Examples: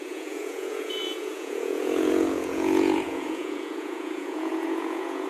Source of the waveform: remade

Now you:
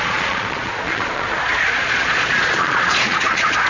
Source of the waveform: remade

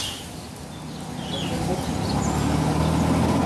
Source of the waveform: recorded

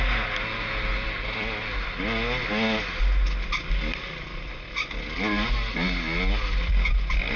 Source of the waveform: recorded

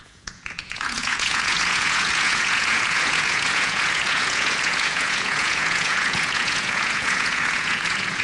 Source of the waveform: remade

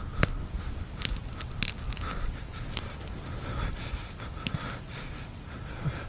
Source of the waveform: recorded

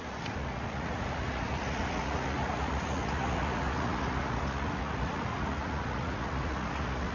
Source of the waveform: remade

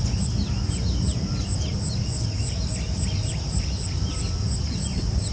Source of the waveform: recorded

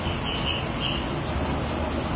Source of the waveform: recorded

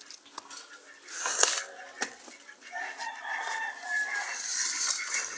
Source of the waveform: recorded